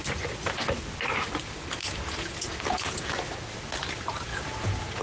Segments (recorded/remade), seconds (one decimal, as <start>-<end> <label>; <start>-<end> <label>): 0.0-1.8 recorded; 1.8-3.1 remade; 3.1-4.3 recorded; 4.3-5.0 remade